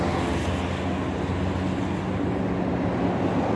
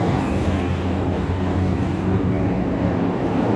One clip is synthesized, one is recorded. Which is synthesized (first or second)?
second